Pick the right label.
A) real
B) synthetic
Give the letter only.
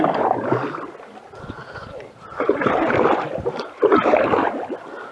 A